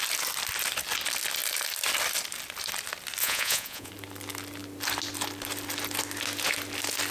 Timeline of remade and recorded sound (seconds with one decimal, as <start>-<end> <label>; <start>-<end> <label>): 0.0-3.2 recorded; 3.2-3.9 remade; 3.9-7.1 recorded

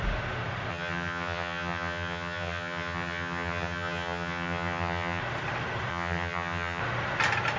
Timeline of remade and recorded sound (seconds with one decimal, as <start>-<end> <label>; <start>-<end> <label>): 0.0-0.7 recorded; 0.7-5.2 remade; 5.2-5.9 recorded; 5.9-6.8 remade; 6.8-7.6 recorded